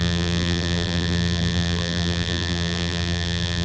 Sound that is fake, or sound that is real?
fake